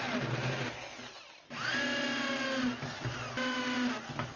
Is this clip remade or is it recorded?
recorded